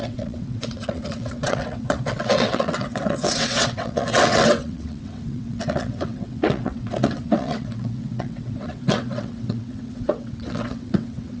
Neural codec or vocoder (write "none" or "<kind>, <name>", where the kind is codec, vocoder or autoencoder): vocoder, WaveNeXt